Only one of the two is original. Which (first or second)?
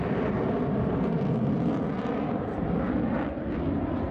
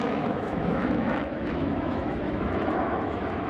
first